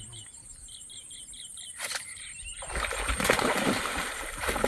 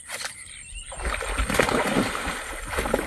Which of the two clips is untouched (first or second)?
second